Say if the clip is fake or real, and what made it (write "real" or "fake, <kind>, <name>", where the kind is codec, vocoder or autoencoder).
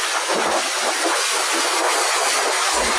real